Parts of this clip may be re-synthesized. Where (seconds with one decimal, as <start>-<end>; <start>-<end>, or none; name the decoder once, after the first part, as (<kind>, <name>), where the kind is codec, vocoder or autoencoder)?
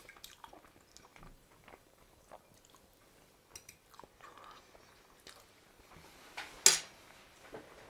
1.1-2.4 (vocoder, BigVGAN v2)